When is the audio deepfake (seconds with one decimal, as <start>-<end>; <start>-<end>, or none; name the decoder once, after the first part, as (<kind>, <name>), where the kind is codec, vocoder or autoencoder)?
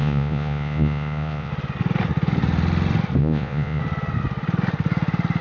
0.0-1.5 (vocoder, Vocos); 3.2-3.8